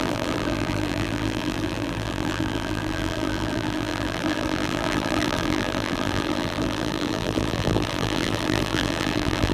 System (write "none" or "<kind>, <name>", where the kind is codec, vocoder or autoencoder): vocoder, BigVGAN v2